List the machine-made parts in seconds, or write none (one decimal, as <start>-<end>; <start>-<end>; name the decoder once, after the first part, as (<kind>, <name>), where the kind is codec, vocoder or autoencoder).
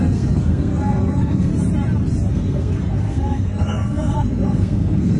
0.0-1.5 (codec, SNAC); 2.3-5.2